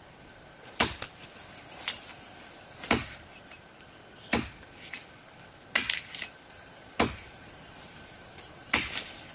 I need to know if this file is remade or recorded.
recorded